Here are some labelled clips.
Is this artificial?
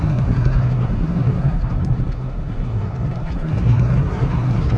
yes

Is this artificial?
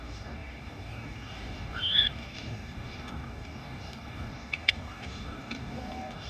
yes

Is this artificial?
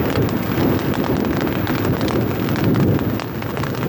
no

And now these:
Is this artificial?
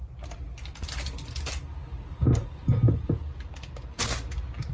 no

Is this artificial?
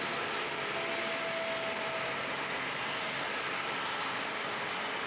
no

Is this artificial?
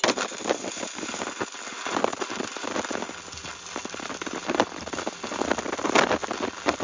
no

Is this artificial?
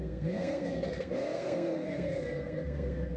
yes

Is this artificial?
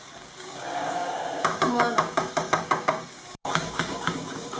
yes